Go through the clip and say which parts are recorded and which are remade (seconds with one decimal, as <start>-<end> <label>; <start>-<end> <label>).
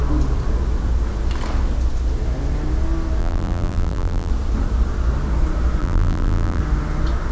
0.0-3.2 recorded; 3.2-4.3 remade; 4.3-5.8 recorded; 5.8-6.6 remade; 6.6-7.3 recorded